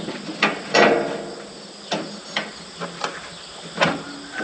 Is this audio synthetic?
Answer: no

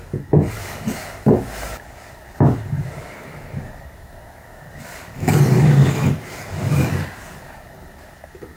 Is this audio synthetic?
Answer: yes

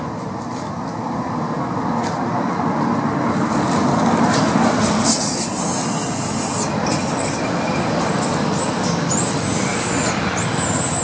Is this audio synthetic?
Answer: no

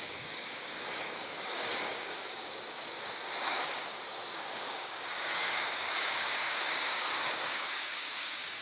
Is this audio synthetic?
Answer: yes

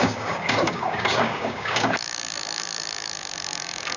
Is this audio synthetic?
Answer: yes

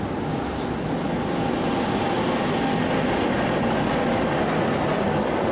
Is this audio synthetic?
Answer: no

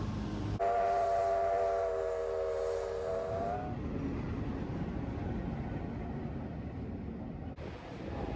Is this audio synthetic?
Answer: no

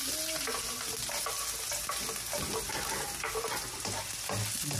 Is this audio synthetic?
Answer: no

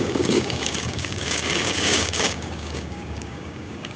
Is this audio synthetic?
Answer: yes